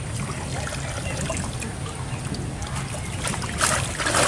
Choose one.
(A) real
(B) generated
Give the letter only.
A